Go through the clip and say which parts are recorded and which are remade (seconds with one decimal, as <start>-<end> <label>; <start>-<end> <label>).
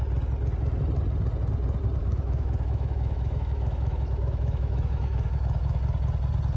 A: 0.0-2.0 recorded; 2.0-5.8 remade; 5.8-6.6 recorded